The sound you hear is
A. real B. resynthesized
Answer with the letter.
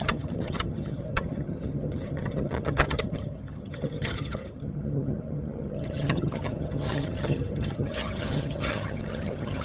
B